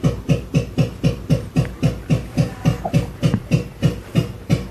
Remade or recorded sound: remade